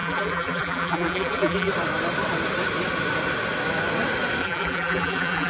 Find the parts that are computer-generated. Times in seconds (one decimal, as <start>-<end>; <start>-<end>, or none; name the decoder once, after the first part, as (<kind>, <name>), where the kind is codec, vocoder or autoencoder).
0.0-1.7 (vocoder, BigVGAN v2); 4.4-5.5